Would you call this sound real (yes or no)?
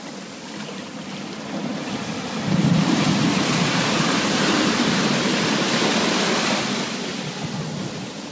yes